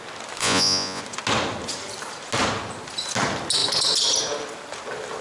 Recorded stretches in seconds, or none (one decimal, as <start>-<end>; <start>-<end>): 0.0-0.4; 1.0-5.2